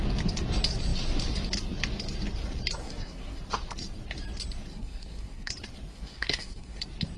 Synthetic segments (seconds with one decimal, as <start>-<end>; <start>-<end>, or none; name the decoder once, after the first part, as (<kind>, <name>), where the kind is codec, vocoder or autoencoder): 2.8-3.4 (codec, SNAC); 4.7-5.5; 5.9-6.8